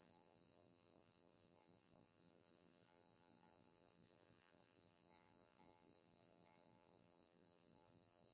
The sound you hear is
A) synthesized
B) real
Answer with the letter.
A